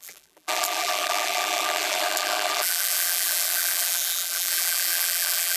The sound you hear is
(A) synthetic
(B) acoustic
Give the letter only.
A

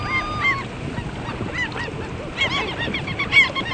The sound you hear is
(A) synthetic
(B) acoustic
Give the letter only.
B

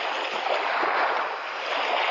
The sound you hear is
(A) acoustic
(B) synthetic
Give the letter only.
A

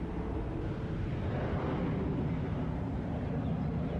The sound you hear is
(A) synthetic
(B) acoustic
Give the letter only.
B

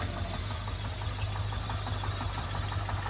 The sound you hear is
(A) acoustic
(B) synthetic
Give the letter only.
A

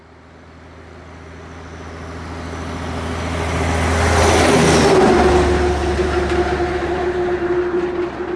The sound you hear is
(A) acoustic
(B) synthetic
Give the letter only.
A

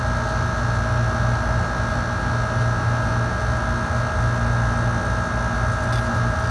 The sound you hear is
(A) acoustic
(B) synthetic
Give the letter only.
A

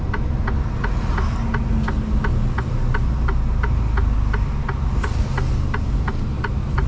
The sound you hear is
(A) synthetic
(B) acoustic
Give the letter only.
B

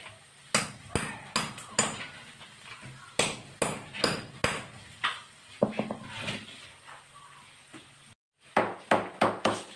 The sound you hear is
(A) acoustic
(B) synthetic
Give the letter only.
A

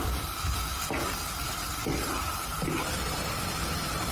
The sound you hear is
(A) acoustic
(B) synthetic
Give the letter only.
A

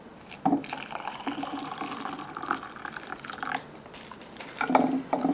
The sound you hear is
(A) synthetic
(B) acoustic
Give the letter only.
A